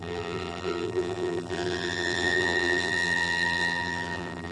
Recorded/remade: remade